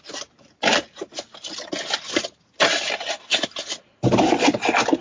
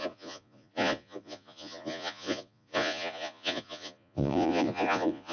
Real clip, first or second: first